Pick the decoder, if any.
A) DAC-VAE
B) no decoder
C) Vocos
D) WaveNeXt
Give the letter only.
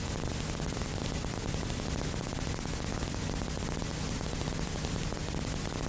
B